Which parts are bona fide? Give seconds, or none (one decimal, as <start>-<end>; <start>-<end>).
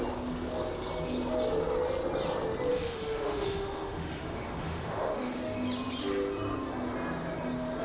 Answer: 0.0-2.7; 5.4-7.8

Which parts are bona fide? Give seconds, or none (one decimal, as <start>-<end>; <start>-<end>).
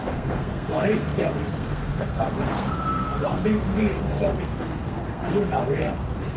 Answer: none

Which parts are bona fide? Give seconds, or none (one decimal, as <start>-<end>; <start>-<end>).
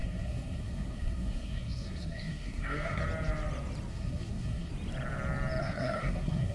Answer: 3.0-3.9; 4.7-5.6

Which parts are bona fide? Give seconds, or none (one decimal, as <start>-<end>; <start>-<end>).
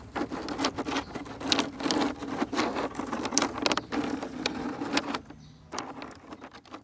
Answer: 0.0-6.8